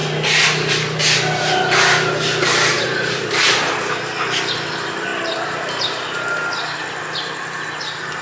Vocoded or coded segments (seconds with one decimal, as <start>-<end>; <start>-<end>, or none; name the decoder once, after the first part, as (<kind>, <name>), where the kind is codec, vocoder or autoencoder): 2.7-3.3 (vocoder, Vocos)